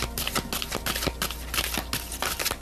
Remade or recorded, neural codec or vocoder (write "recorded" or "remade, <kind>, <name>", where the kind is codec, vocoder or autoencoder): recorded